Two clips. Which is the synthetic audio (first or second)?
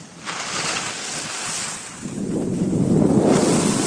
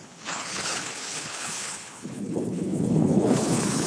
second